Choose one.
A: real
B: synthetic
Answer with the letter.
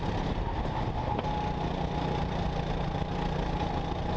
A